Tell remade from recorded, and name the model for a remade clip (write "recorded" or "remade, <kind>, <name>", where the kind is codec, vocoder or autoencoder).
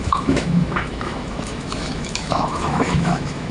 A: remade, autoencoder, DAC-VAE